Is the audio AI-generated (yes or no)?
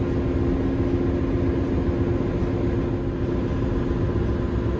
no